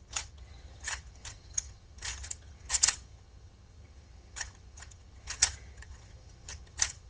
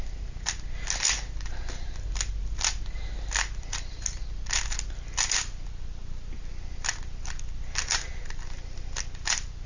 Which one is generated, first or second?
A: first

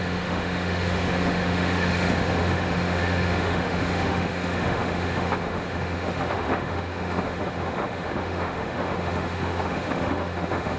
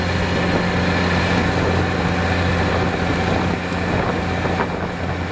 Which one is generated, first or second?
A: first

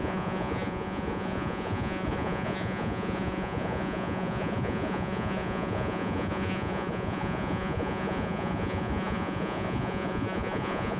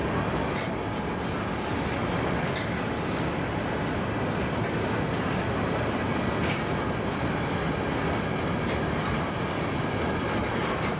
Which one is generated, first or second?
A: first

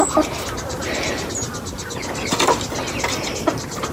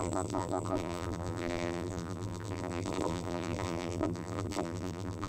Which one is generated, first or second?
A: second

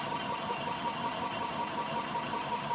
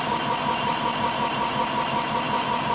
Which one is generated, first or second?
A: first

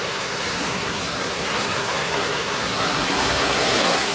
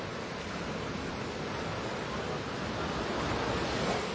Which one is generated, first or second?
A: first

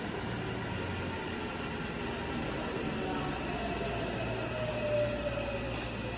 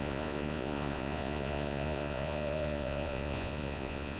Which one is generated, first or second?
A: second